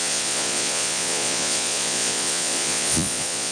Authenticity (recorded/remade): remade